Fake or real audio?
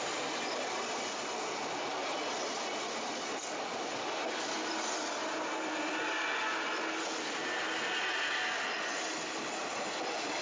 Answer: real